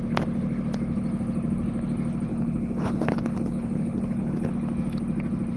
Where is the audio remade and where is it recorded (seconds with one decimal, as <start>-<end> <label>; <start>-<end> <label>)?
0.0-2.3 recorded; 2.3-4.5 remade; 4.5-5.6 recorded